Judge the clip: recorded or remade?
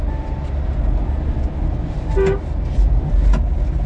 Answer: recorded